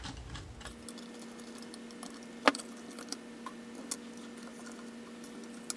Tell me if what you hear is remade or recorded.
recorded